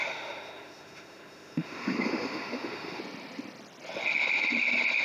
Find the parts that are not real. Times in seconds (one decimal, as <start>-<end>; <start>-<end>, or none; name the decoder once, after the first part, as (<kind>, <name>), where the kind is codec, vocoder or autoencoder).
0.0-3.0 (autoencoder, DAC-VAE)